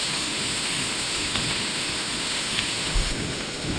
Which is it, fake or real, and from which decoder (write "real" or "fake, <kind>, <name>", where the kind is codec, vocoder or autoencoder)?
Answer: fake, autoencoder, DAC-VAE